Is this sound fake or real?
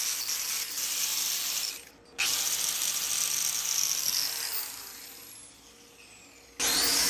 real